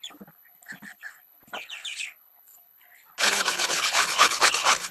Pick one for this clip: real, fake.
fake